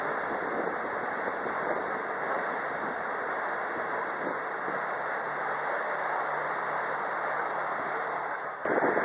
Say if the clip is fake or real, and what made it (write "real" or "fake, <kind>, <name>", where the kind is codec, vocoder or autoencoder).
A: real